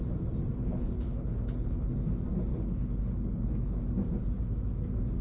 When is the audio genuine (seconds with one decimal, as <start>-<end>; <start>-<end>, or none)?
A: 0.0-0.6; 1.9-2.5; 3.8-5.2